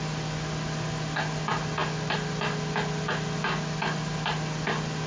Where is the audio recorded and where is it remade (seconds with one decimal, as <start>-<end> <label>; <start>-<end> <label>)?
0.0-5.1 recorded